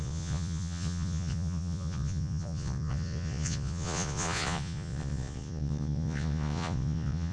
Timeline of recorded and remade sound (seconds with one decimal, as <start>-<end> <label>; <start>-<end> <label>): 0.0-7.3 remade